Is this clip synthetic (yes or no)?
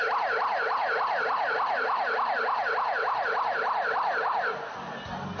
no